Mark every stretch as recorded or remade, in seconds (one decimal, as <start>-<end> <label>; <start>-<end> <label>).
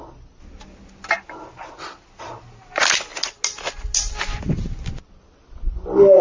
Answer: 0.0-6.2 recorded